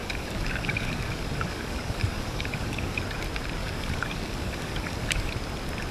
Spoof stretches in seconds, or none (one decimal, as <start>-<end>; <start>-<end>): 0.0-3.0; 3.6-5.3